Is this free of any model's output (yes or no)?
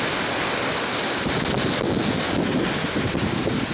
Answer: yes